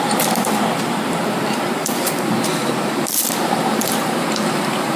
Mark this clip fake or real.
fake